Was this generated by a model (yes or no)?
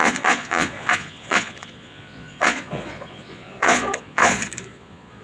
yes